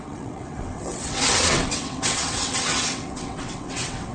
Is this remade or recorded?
remade